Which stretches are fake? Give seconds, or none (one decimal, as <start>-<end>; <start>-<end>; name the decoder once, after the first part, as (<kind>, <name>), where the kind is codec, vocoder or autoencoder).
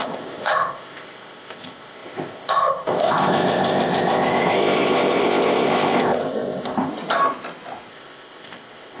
0.0-6.9 (codec, ZipCodec); 7.9-9.0